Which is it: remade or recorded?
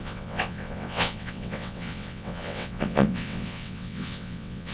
remade